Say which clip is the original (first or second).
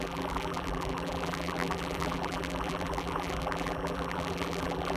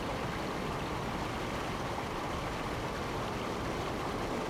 second